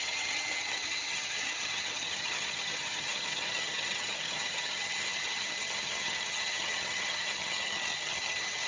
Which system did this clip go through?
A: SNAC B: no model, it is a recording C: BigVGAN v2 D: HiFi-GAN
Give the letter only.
D